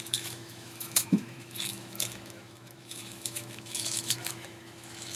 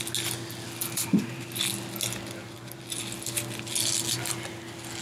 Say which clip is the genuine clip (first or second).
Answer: second